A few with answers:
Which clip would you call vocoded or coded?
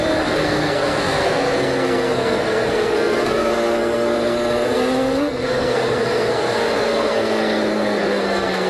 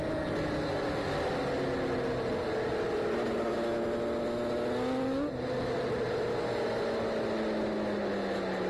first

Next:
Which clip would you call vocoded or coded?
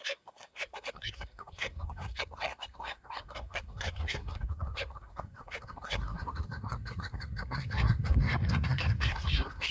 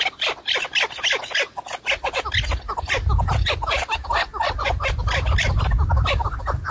first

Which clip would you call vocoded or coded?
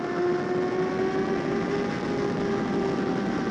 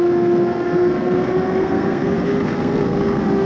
second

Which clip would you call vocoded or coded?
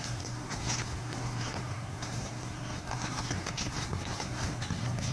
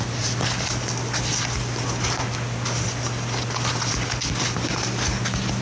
first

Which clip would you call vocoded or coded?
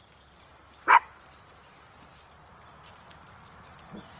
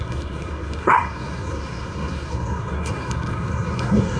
second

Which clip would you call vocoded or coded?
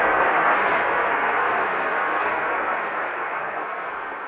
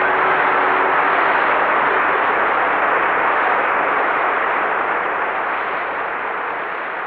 first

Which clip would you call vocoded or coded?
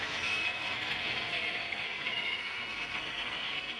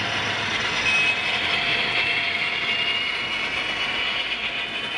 first